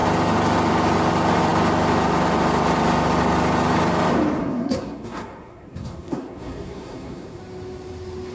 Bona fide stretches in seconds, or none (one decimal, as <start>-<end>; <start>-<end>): 0.0-4.4; 7.4-8.3